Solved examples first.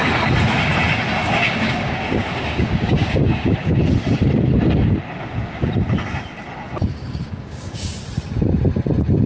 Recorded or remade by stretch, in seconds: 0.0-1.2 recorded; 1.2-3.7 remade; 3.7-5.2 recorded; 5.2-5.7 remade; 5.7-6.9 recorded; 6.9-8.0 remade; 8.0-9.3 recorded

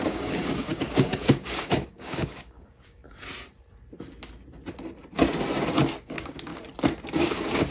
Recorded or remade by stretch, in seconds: 0.0-3.0 remade; 3.0-6.0 recorded; 6.0-6.5 remade; 6.5-7.1 recorded; 7.1-7.7 remade

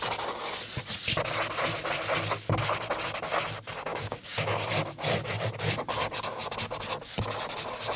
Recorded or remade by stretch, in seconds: 0.0-3.9 recorded; 3.9-4.5 remade; 4.5-8.0 recorded

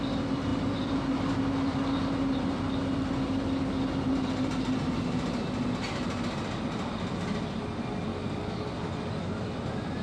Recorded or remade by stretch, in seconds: 0.0-8.1 recorded; 8.1-8.9 remade; 8.9-10.0 recorded

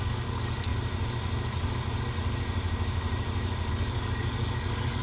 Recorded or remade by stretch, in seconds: 0.0-0.7 remade; 0.7-3.7 recorded; 3.7-5.0 remade

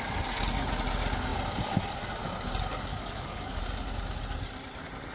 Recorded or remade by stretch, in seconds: 0.0-2.9 recorded; 2.9-3.6 remade; 3.6-5.1 recorded